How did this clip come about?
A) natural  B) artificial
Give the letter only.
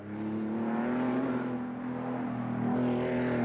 A